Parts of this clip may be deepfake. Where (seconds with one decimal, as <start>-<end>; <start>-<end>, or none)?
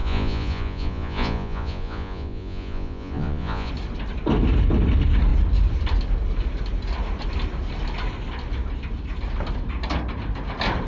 0.0-3.7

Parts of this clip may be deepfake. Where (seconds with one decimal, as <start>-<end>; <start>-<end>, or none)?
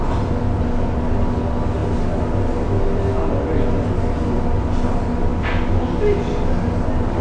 none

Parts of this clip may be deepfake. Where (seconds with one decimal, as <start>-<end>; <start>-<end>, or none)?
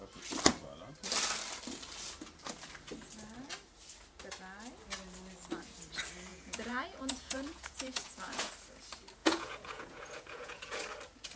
6.3-8.5; 9.2-10.8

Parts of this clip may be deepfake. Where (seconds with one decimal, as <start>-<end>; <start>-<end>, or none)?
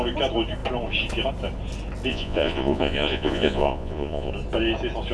2.1-4.3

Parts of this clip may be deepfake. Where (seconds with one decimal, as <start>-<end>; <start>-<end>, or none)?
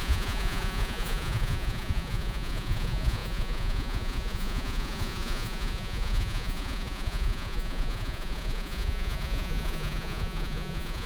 0.0-11.1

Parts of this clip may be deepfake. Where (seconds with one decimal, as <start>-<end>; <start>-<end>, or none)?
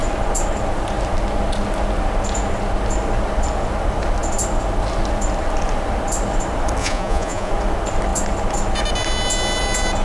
6.8-7.5